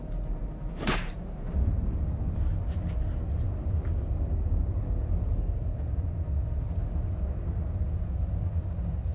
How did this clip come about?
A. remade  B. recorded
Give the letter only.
B